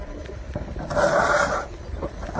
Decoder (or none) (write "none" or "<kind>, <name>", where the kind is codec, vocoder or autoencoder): none